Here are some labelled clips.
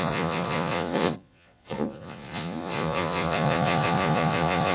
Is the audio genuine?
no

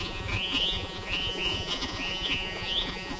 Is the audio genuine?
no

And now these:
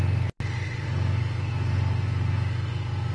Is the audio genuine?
yes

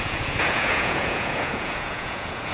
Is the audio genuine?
no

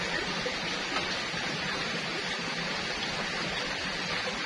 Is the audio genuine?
yes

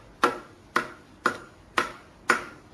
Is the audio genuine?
yes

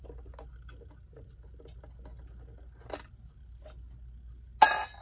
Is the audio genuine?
yes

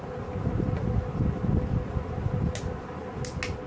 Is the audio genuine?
yes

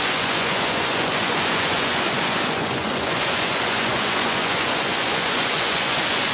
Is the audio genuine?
no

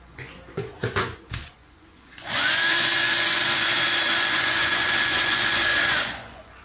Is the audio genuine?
no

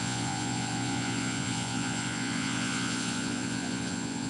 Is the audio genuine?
no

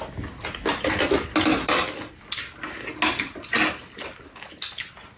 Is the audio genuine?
yes